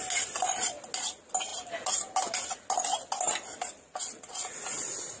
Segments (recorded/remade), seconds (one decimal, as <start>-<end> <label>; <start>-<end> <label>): 0.0-5.2 recorded